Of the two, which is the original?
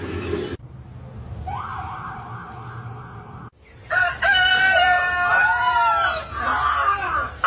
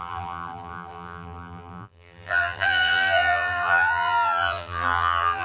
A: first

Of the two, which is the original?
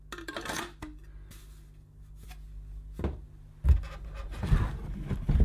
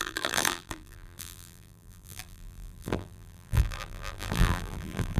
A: first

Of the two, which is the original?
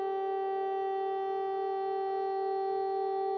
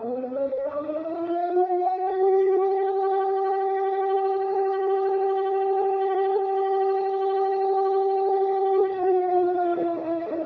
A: first